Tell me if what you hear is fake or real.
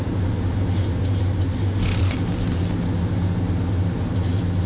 real